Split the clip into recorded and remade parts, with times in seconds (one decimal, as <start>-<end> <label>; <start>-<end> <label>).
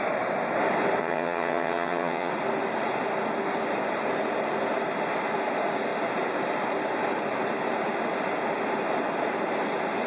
0.0-1.0 recorded; 1.0-2.3 remade; 2.3-10.1 recorded